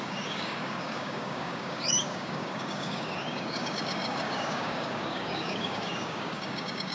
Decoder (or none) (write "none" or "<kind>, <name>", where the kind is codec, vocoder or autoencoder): codec, DAC